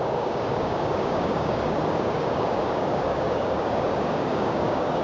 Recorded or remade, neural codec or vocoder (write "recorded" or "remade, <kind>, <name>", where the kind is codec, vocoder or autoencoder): remade, codec, DAC